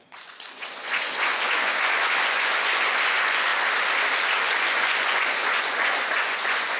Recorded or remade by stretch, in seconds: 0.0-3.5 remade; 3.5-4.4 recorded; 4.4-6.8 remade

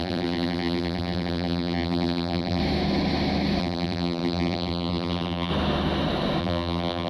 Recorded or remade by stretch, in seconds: 0.0-2.6 remade; 2.6-3.6 recorded; 3.6-5.5 remade; 5.5-6.4 recorded; 6.4-7.1 remade

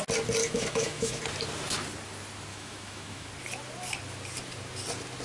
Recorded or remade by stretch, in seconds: 0.0-0.4 recorded; 0.4-1.2 remade; 1.2-2.5 recorded; 2.5-3.3 remade; 3.3-5.2 recorded

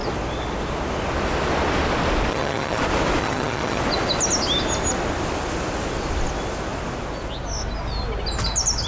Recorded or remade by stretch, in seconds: 0.0-2.3 recorded; 2.3-2.8 remade; 2.8-3.2 recorded; 3.2-3.8 remade; 3.8-8.9 recorded

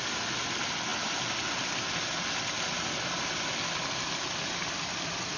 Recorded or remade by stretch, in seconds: 0.0-5.4 recorded

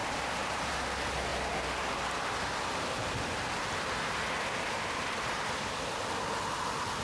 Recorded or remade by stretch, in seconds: 0.0-0.7 remade; 0.7-7.0 recorded